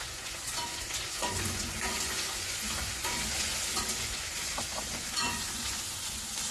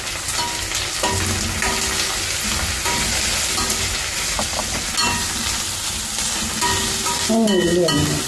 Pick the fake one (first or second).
first